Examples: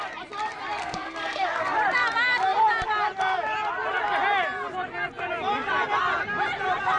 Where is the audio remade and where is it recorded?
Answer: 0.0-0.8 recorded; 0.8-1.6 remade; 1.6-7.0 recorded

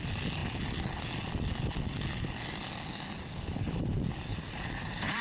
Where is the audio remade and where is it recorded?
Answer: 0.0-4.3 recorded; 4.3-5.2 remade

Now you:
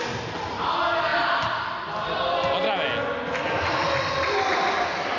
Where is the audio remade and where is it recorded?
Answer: 0.0-5.2 recorded